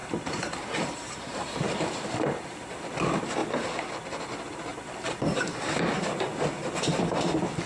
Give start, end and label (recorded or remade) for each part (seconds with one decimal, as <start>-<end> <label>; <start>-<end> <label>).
0.0-2.7 remade; 2.7-4.7 recorded; 4.7-5.6 remade; 5.6-7.7 recorded